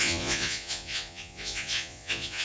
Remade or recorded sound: remade